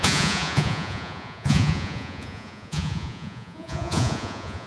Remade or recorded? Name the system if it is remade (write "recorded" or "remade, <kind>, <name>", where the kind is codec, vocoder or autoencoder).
remade, vocoder, Vocos